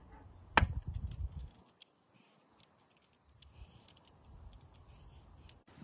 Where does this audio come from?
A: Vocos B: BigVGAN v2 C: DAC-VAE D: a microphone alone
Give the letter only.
D